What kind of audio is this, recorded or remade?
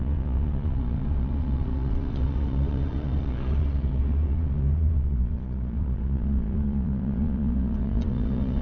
remade